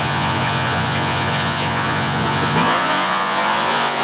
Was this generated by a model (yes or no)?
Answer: yes